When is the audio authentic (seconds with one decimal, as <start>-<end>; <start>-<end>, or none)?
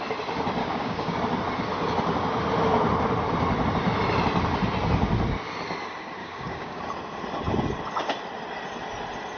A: 0.0-0.6; 1.2-6.2; 6.8-9.4